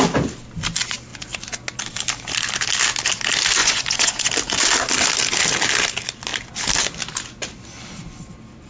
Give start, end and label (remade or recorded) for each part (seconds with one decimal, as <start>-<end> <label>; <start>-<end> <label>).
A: 0.0-3.6 recorded; 3.6-4.3 remade; 4.3-8.7 recorded